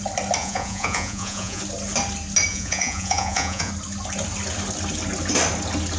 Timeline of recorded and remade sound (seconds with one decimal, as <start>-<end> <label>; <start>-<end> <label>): 0.0-0.4 recorded; 0.4-1.6 remade; 1.6-2.5 recorded; 2.5-3.7 remade; 3.7-6.0 recorded